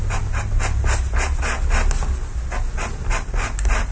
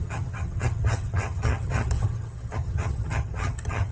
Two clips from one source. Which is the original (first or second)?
first